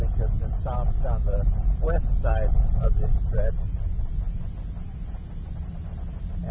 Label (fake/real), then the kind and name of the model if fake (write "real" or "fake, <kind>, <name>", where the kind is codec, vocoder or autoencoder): real